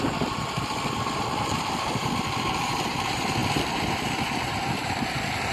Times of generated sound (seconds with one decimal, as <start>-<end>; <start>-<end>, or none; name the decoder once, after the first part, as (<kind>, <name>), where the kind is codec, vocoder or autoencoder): 0.0-2.0 (vocoder, BigVGAN v2); 2.9-5.5

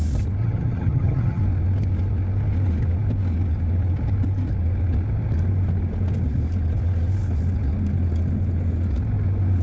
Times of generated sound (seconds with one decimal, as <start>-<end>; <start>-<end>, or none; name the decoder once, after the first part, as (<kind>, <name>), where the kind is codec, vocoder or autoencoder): 0.4-1.4 (vocoder, HiFi-GAN)

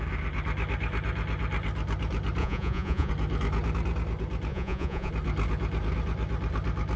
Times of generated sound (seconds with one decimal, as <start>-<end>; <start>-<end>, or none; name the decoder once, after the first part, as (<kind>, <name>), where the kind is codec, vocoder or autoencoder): 2.4-3.1 (vocoder, Vocos); 4.5-5.1

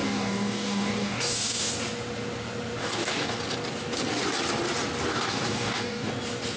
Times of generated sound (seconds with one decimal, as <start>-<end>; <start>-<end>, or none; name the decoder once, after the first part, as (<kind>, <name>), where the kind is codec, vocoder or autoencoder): 0.0-1.7 (codec, DAC); 2.8-3.4; 5.1-6.1